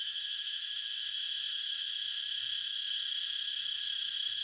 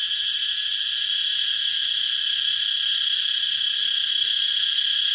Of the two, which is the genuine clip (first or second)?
second